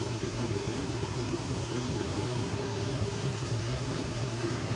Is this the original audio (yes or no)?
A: no